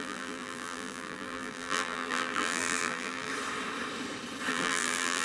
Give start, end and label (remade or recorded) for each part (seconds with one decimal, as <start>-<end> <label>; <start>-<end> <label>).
0.0-3.3 remade; 3.3-4.5 recorded; 4.5-5.2 remade